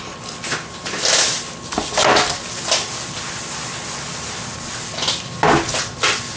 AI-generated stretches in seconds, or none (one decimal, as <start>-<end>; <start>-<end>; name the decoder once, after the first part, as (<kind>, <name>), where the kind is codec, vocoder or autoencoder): none